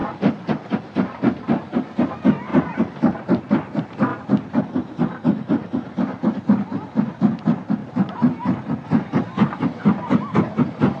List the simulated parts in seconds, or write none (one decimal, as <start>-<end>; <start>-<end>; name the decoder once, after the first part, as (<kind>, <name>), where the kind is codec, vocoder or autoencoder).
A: 0.0-0.5 (vocoder, BigVGAN v2); 2.5-3.4; 7.8-9.0